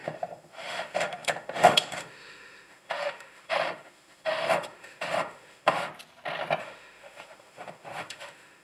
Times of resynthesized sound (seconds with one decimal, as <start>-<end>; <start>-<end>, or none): 0.0-5.9; 6.6-8.6